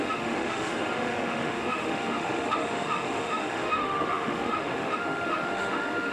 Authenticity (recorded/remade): remade